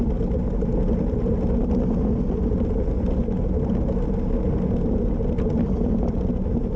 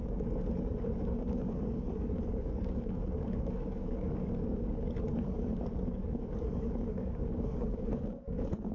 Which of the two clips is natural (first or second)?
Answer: first